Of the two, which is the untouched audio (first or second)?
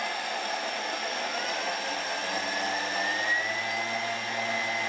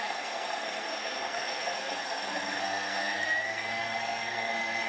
first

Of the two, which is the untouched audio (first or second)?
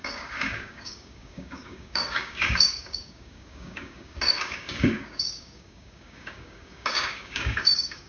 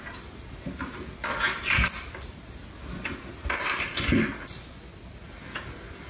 second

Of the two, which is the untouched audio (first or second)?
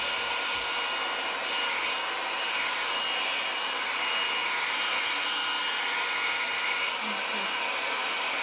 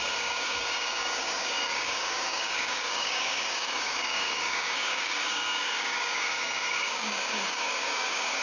first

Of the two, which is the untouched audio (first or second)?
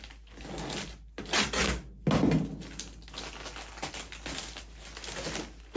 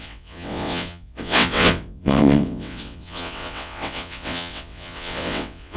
first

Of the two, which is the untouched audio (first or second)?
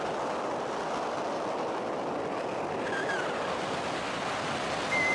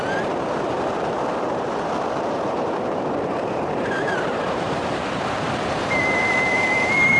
first